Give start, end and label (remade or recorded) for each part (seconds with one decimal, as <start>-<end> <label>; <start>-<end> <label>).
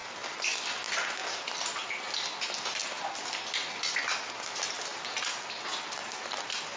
0.0-6.8 recorded